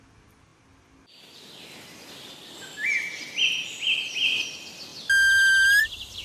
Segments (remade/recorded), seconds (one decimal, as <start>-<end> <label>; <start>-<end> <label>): 0.0-6.2 recorded